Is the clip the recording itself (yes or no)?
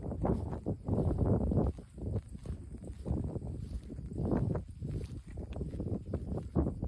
yes